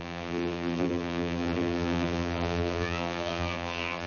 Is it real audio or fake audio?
fake